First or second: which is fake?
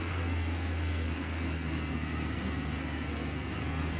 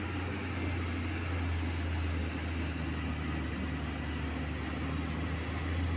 first